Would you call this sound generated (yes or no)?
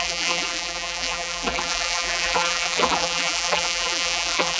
yes